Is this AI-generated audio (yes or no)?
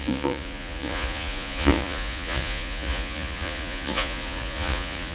yes